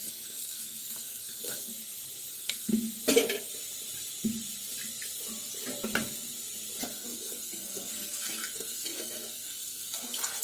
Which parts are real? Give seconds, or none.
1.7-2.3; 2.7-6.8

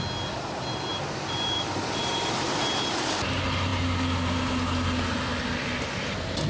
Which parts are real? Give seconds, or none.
0.0-0.9; 2.6-6.5

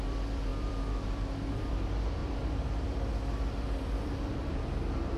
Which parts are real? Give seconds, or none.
none

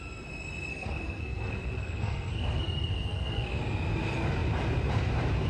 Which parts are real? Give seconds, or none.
0.0-0.7; 3.6-5.5

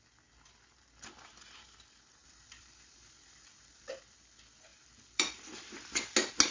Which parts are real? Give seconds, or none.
0.0-2.2; 3.9-4.7; 5.7-6.5

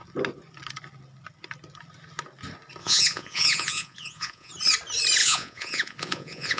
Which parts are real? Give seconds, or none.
0.0-2.8; 4.5-5.2